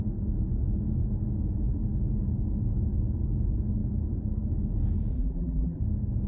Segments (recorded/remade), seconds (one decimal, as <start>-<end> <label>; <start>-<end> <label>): 0.0-5.1 recorded; 5.1-5.8 remade; 5.8-6.3 recorded